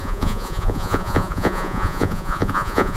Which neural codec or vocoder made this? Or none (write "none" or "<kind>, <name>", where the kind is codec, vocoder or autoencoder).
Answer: vocoder, Vocos